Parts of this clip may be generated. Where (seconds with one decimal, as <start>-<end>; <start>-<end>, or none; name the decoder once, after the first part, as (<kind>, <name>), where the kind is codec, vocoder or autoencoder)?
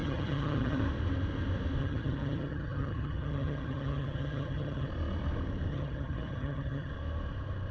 0.0-0.8 (vocoder, HiFi-GAN); 1.8-4.9; 5.7-6.9